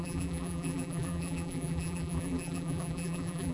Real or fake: fake